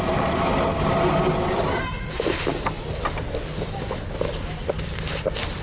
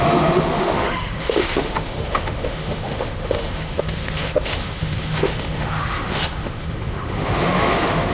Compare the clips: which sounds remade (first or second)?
second